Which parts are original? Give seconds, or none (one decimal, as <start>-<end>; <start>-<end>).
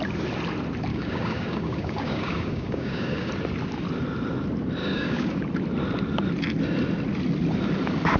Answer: 0.0-0.9; 3.3-4.8; 5.4-8.2